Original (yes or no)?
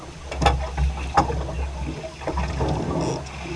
yes